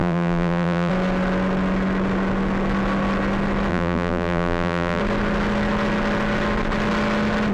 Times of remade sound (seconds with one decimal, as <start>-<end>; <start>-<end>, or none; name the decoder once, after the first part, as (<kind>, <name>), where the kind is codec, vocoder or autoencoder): 0.0-0.9 (vocoder, BigVGAN v2); 3.7-5.0